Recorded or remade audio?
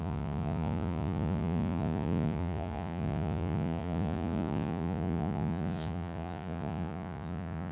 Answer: remade